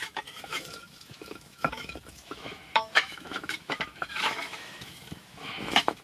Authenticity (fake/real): fake